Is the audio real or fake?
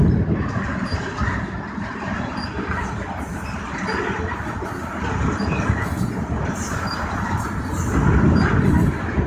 real